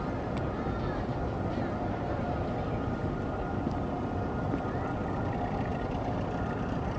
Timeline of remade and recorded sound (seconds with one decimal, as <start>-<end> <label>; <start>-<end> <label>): 0.0-7.0 recorded